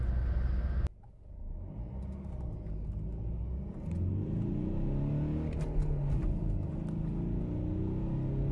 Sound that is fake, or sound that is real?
real